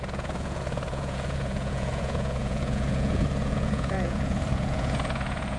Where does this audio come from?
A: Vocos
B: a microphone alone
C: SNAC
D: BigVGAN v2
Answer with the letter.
A